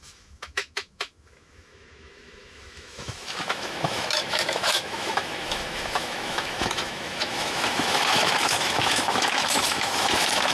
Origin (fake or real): fake